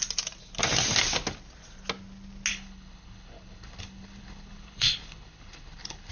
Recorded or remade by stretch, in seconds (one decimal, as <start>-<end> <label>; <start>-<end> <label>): 0.0-2.5 recorded; 2.5-6.1 remade